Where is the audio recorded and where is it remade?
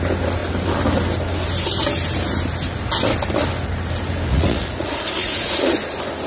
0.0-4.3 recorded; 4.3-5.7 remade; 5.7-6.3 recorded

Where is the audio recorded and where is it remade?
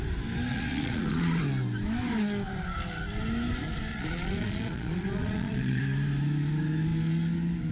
0.0-0.5 recorded; 0.5-1.4 remade; 1.4-3.9 recorded; 3.9-5.8 remade; 5.8-7.7 recorded